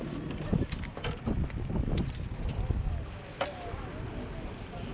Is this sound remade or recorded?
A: recorded